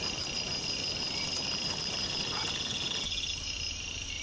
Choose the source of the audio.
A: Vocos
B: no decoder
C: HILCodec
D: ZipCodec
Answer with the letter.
B